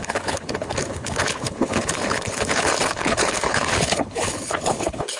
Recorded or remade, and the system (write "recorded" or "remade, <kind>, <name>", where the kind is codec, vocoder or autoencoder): remade, codec, HILCodec